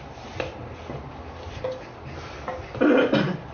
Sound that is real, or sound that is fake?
real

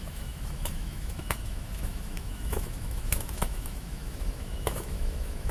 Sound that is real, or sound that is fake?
fake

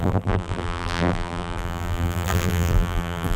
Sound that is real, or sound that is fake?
fake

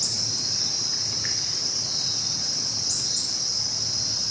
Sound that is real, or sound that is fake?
real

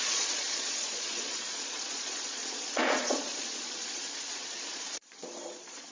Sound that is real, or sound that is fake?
fake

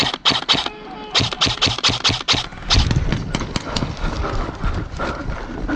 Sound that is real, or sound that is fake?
real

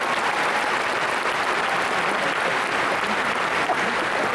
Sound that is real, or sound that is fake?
real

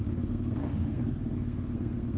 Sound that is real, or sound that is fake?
fake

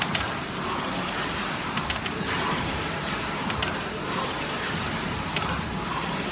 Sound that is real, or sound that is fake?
fake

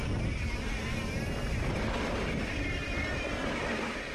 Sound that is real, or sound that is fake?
real